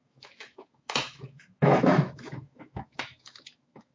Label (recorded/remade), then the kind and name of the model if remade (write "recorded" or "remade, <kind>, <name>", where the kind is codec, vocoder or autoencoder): remade, autoencoder, DAC-VAE